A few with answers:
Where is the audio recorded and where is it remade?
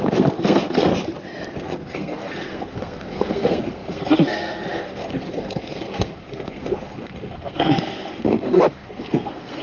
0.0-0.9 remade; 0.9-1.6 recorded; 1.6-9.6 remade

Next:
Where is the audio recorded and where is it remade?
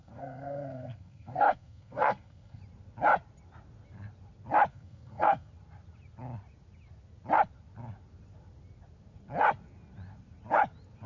0.0-2.6 remade; 2.6-4.7 recorded; 4.7-5.5 remade; 5.5-11.1 recorded